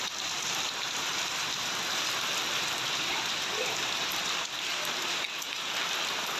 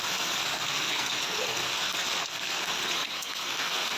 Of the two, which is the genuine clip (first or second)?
first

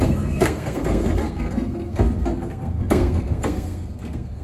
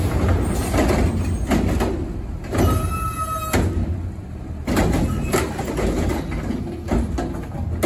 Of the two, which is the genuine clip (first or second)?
second